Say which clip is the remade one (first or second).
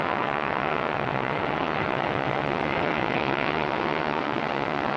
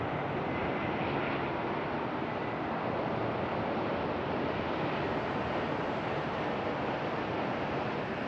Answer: first